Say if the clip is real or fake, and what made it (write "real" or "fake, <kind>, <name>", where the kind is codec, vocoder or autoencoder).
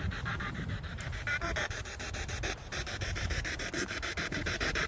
fake, vocoder, BigVGAN v2